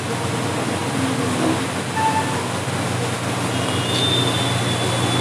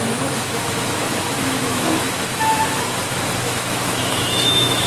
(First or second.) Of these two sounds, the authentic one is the first